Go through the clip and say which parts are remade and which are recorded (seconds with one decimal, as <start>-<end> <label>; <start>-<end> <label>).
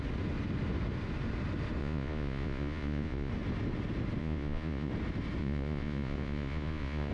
0.0-1.8 recorded; 1.8-3.3 remade; 3.3-4.2 recorded; 4.2-4.9 remade; 4.9-5.4 recorded; 5.4-7.1 remade